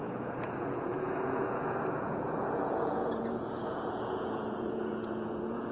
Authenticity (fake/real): fake